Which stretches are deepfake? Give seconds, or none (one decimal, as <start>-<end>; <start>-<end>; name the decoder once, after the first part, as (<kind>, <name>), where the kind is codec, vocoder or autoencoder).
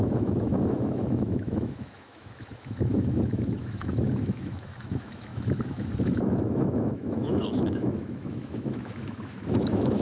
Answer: 0.0-10.0 (autoencoder, DAC-VAE)